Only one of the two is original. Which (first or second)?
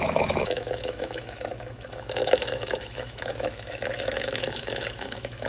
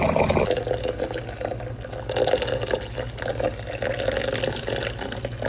second